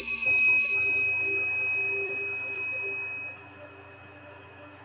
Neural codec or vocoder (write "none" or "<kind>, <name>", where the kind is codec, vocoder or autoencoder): autoencoder, DAC-VAE